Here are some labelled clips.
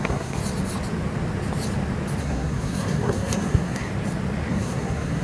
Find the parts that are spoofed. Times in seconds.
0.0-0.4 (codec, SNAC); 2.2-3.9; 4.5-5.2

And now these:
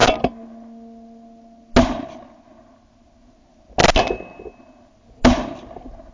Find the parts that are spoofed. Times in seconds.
none